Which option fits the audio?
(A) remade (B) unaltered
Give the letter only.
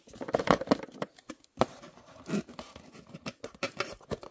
B